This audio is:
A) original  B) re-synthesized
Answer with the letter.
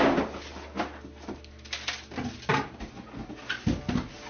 A